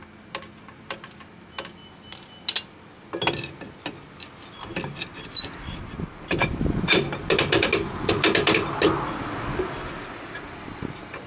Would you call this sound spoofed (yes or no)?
no